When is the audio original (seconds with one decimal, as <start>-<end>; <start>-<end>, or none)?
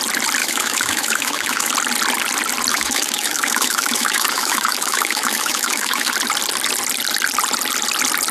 0.0-0.4; 1.7-2.7; 6.1-8.3